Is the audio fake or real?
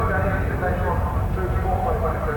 real